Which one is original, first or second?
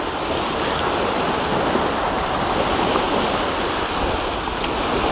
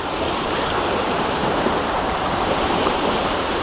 first